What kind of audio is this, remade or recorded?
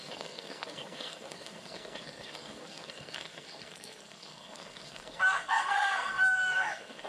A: remade